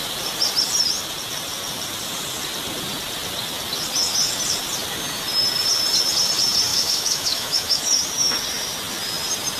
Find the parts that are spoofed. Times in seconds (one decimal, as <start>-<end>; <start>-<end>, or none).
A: 6.7-8.0